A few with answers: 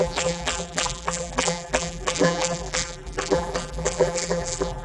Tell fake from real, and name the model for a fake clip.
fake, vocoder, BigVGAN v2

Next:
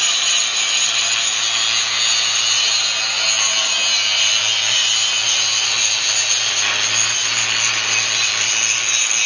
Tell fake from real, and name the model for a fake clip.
real